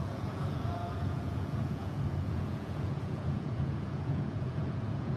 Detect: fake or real fake